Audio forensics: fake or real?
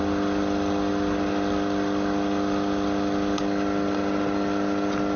real